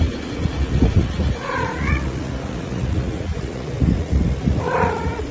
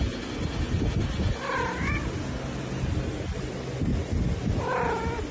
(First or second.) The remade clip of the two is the first